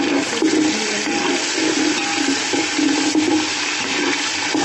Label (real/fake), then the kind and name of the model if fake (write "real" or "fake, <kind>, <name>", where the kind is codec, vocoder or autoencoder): real